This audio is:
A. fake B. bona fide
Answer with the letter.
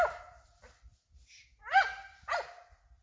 B